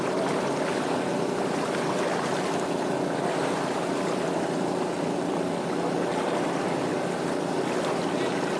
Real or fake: real